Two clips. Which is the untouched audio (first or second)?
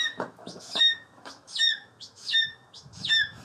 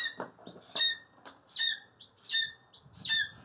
second